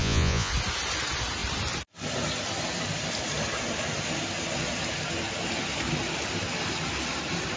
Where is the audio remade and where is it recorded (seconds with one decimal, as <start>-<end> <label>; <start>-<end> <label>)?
0.0-0.5 remade; 0.5-7.6 recorded